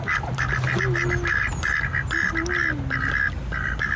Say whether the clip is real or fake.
real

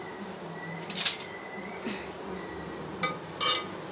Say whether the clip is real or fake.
real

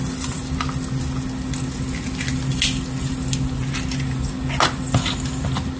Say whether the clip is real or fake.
real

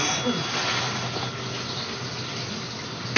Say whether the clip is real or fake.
real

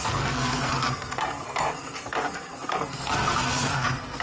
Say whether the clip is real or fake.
fake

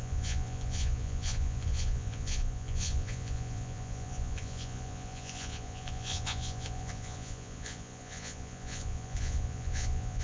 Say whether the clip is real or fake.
fake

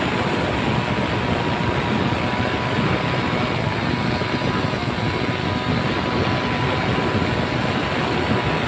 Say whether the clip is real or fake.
real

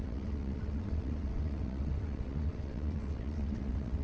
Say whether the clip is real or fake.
fake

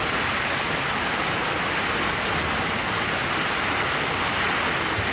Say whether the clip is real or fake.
real